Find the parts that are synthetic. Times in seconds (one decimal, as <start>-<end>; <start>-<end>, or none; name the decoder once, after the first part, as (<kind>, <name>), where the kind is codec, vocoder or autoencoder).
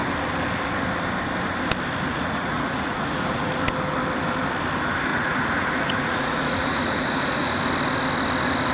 2.1-3.5 (vocoder, Vocos); 5.1-7.6